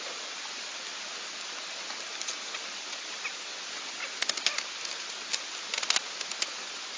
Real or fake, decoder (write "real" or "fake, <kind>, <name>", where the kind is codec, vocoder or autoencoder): real